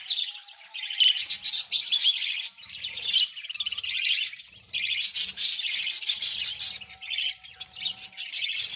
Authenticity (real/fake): fake